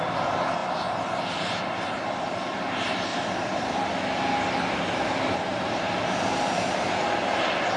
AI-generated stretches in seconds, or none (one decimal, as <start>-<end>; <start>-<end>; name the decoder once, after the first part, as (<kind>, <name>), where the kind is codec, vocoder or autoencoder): 0.6-1.6 (vocoder, BigVGAN v2); 3.1-3.9; 5.5-6.9